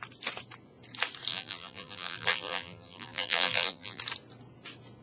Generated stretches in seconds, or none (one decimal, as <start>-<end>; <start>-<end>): 1.3-4.0